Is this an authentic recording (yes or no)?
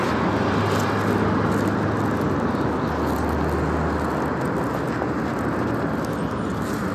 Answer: yes